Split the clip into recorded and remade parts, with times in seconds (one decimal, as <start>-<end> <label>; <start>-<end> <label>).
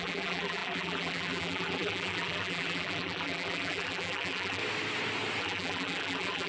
0.0-4.6 remade; 4.6-5.4 recorded; 5.4-6.5 remade